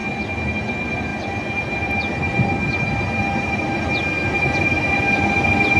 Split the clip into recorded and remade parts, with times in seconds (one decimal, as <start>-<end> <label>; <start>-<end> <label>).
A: 0.0-5.8 recorded